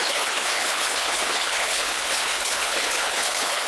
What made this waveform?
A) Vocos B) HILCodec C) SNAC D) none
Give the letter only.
B